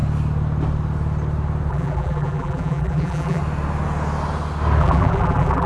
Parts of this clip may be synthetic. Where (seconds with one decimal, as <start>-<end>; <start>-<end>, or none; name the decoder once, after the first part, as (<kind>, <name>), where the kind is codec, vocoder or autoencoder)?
1.7-3.4 (vocoder, BigVGAN v2); 4.8-5.7